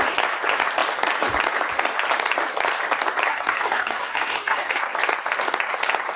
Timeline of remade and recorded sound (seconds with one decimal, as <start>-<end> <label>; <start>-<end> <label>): 0.0-3.3 recorded; 3.3-4.8 remade; 4.8-6.2 recorded